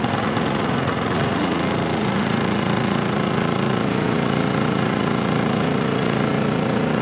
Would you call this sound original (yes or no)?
no